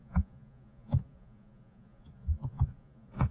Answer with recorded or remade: remade